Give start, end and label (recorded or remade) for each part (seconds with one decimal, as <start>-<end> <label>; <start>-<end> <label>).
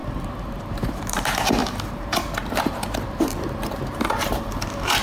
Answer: 0.0-5.0 remade